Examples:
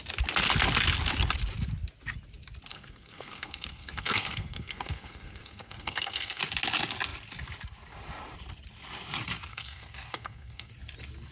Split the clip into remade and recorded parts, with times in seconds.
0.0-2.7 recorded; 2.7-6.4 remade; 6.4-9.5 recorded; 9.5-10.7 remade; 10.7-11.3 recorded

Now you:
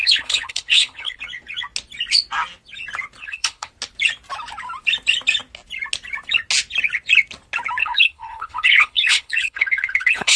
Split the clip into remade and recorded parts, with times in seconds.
0.0-1.2 remade; 1.2-3.2 recorded; 3.2-3.7 remade; 3.7-7.8 recorded; 7.8-10.4 remade

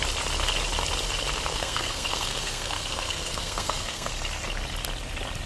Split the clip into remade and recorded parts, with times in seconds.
0.0-1.5 recorded; 1.5-4.1 remade; 4.1-5.5 recorded

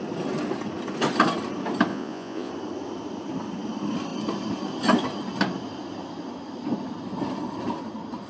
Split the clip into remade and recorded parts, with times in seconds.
0.0-1.9 recorded; 1.9-2.5 remade; 2.5-8.3 recorded

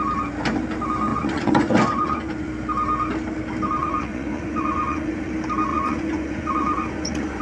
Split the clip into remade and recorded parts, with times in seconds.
0.0-1.1 recorded; 1.1-2.5 remade; 2.5-3.8 recorded; 3.8-5.3 remade; 5.3-5.7 recorded; 5.7-7.4 remade

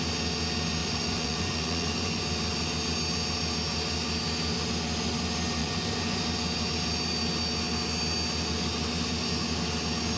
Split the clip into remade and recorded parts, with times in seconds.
0.0-0.8 recorded; 0.8-2.2 remade; 2.2-5.6 recorded; 5.6-6.2 remade; 6.2-10.2 recorded